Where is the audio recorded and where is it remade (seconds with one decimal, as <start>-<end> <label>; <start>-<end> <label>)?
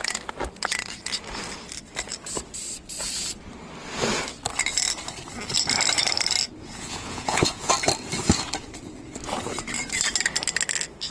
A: 0.0-6.6 recorded; 6.6-7.7 remade; 7.7-11.1 recorded